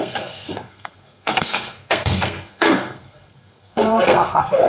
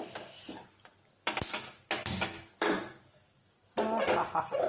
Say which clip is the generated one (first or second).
first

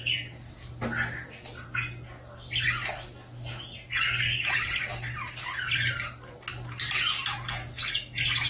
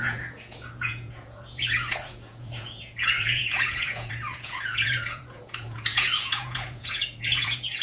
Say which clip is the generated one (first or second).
second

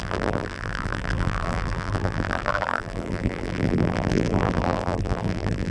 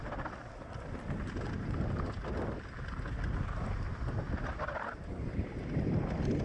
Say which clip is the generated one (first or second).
first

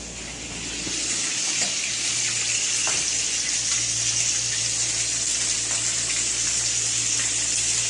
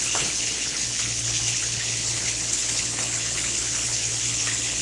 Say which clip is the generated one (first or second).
second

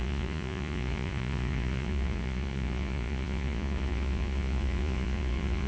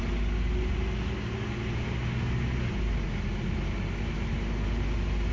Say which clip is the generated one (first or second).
first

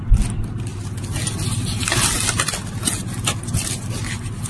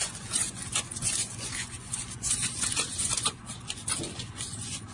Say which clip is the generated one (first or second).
second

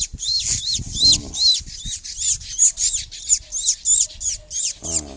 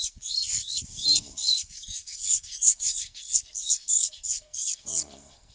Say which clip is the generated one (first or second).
second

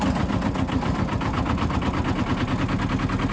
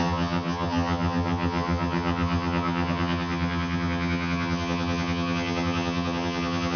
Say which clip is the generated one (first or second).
second